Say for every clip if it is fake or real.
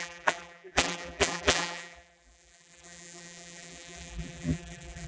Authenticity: fake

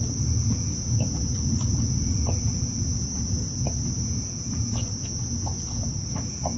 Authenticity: real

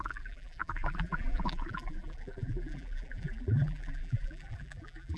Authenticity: fake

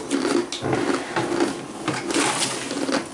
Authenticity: real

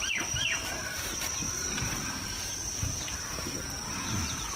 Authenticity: fake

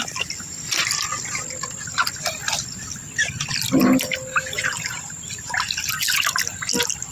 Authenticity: real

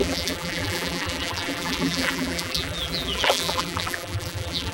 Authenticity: fake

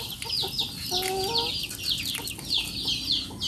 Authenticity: real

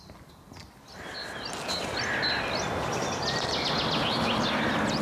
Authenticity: real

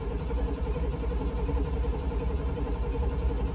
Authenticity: fake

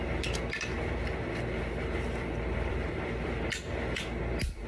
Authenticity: fake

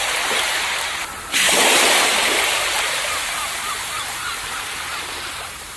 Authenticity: fake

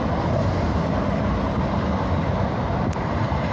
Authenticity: fake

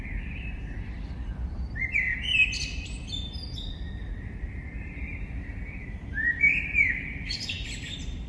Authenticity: fake